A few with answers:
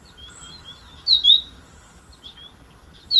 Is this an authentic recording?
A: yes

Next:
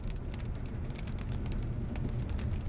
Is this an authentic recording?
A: yes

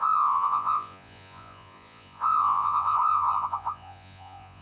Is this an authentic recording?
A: no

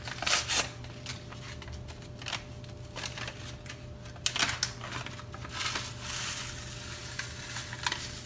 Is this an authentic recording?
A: yes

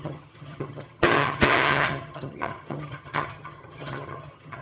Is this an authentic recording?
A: no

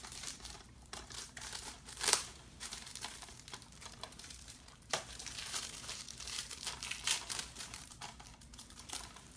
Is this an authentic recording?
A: no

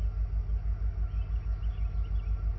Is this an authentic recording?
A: yes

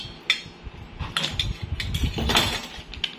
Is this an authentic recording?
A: yes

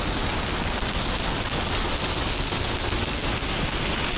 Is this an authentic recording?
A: yes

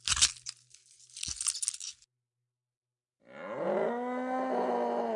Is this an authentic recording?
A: yes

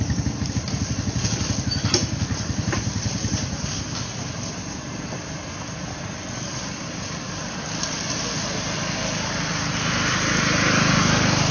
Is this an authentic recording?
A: yes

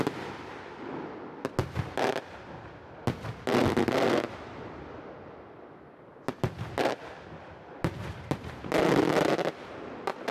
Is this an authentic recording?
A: yes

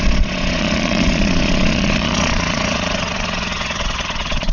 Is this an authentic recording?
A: no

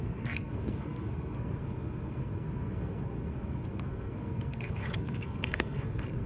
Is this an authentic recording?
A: no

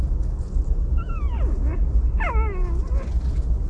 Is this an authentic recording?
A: yes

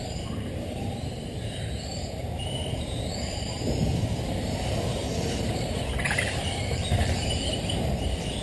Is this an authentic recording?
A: no